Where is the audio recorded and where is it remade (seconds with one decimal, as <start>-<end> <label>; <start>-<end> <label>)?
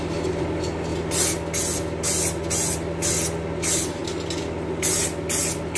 0.0-5.8 recorded